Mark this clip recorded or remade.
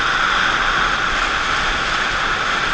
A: recorded